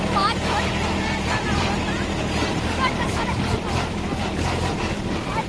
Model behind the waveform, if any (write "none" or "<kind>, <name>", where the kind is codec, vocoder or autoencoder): none